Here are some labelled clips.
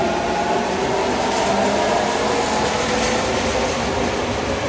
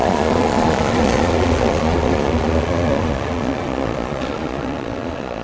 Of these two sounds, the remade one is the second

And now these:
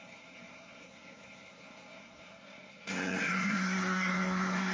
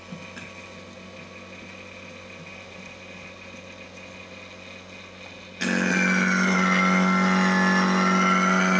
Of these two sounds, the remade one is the first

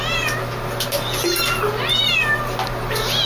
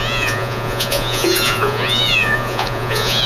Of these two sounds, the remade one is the second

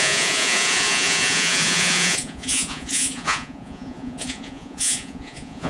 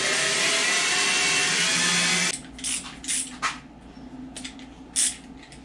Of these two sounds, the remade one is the first